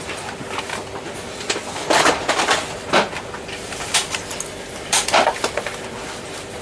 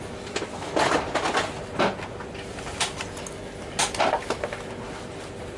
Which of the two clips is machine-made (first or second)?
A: first